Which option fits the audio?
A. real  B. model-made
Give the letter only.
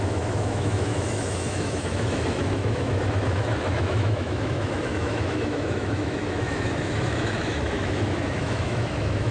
B